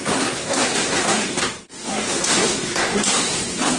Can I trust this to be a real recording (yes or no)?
no